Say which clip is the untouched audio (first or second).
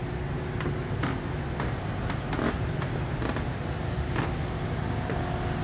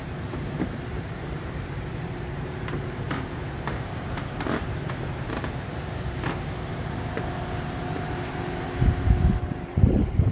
first